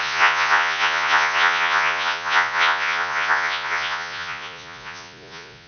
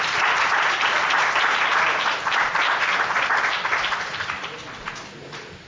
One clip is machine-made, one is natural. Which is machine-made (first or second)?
first